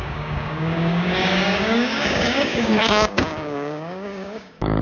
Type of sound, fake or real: fake